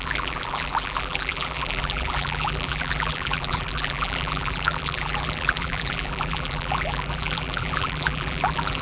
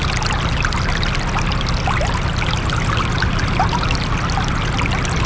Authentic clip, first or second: second